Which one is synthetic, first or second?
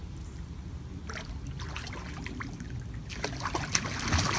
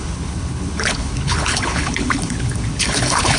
second